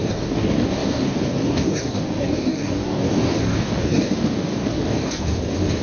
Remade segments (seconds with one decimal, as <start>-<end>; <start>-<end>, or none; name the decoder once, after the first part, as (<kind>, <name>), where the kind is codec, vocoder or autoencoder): 0.0-5.8 (codec, DAC)